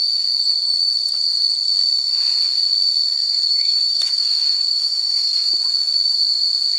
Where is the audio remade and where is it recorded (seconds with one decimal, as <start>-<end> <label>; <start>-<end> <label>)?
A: 0.0-3.1 recorded; 3.1-5.5 remade; 5.5-6.8 recorded